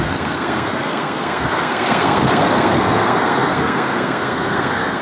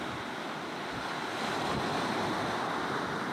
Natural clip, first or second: second